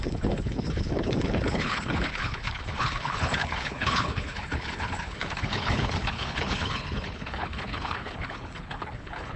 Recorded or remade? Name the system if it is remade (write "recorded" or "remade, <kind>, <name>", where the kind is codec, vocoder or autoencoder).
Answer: remade, codec, HILCodec